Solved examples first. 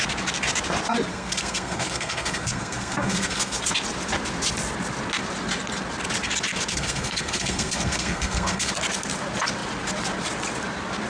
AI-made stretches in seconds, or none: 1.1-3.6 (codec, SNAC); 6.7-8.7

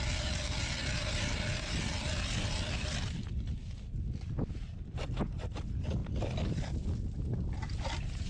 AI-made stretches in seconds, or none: none

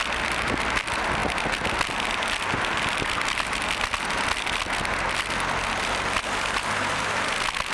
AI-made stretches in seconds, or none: none

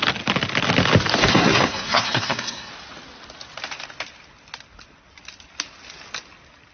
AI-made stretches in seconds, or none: 1.3-2.7 (codec, SNAC)